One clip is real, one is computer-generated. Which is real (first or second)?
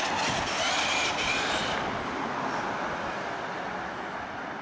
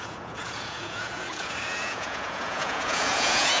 first